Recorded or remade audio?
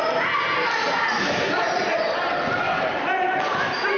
recorded